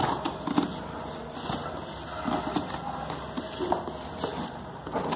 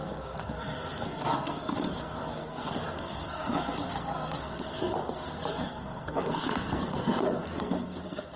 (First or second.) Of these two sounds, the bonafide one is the first